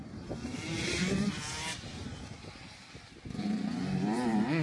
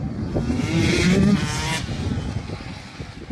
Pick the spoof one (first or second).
first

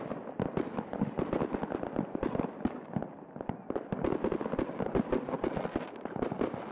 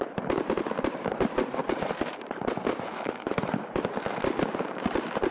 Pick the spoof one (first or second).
second